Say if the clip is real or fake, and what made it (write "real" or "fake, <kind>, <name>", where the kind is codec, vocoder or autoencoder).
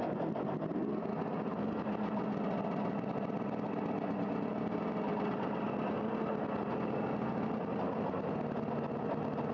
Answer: real